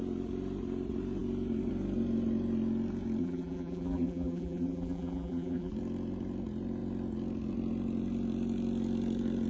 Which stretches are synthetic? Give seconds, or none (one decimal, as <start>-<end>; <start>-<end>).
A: 3.2-5.7